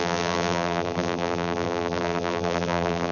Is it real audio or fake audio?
fake